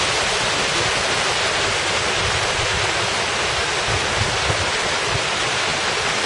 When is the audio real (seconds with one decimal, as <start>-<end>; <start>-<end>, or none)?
0.0-6.3